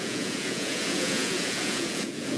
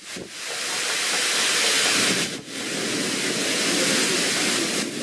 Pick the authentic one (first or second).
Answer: second